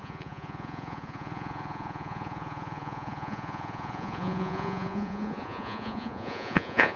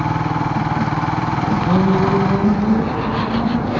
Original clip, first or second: second